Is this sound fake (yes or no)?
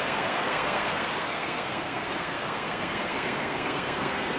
yes